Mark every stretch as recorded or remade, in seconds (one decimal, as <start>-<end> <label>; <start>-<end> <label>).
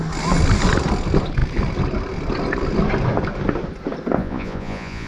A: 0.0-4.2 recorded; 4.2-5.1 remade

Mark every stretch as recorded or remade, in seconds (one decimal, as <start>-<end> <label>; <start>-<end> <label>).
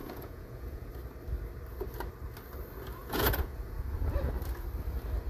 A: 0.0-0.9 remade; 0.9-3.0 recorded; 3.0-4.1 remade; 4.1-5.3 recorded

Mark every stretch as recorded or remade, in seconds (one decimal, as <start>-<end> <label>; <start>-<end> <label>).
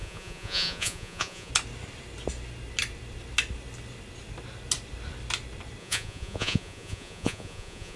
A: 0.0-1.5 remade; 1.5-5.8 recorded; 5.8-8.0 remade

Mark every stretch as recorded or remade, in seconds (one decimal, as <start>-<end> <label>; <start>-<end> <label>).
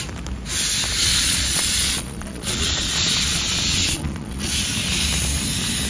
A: 0.0-1.0 recorded; 1.0-4.5 remade; 4.5-5.9 recorded